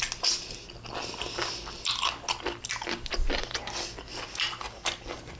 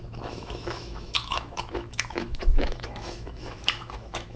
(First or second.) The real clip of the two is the first